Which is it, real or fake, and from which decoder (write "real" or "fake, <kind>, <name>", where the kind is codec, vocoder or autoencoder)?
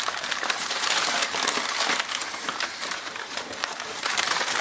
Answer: fake, vocoder, BigVGAN v2